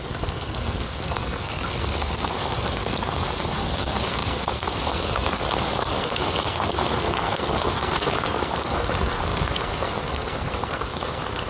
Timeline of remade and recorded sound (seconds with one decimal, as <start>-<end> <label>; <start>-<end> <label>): 0.0-11.5 remade